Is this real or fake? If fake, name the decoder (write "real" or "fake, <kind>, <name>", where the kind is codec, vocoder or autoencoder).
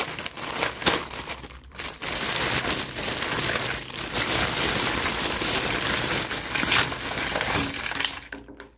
real